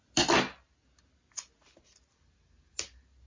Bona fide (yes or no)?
yes